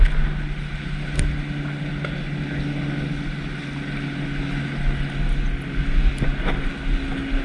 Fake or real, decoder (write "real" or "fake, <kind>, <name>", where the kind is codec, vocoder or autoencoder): real